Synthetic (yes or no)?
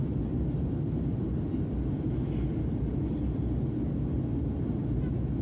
no